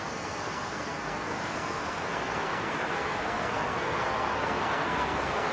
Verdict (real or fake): fake